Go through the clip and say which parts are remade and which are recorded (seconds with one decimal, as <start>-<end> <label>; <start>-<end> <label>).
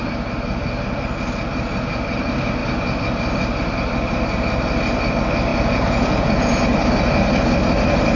0.0-5.5 recorded; 5.5-6.5 remade; 6.5-8.2 recorded